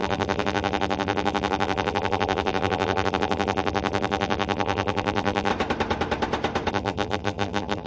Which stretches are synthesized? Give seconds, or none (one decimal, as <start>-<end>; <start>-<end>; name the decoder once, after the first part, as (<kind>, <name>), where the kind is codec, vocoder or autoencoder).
0.0-5.5 (vocoder, BigVGAN v2); 6.7-7.9